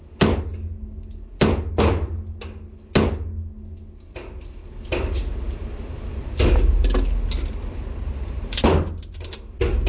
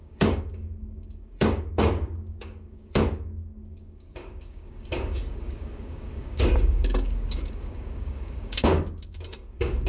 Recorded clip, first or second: first